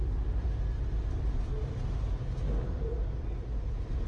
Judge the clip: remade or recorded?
remade